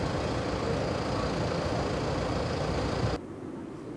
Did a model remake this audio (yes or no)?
no